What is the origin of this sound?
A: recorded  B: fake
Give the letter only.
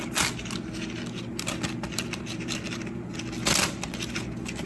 A